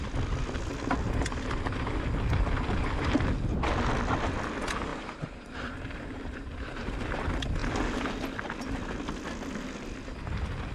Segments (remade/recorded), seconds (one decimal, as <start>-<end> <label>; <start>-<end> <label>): 0.0-4.9 recorded; 4.9-7.0 remade; 7.0-10.7 recorded